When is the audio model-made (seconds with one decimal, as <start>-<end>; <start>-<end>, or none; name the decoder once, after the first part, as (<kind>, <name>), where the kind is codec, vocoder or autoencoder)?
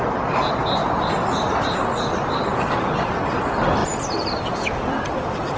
0.0-0.8 (vocoder, BigVGAN v2); 1.6-5.6